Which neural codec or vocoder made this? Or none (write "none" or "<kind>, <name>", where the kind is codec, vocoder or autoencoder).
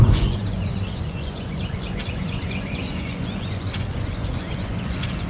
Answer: vocoder, Vocos